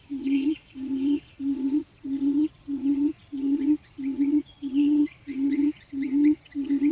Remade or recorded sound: remade